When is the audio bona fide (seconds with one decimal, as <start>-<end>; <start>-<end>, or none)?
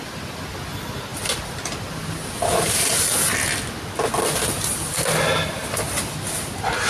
0.0-1.1; 3.0-6.9